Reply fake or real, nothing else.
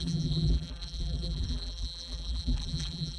fake